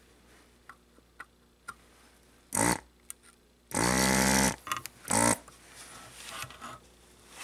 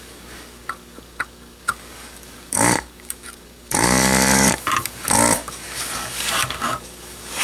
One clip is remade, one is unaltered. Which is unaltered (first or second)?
first